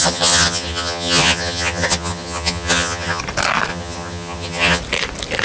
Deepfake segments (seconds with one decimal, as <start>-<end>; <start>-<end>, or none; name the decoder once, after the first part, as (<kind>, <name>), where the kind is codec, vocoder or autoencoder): 0.0-3.2 (vocoder, HiFi-GAN); 3.7-4.8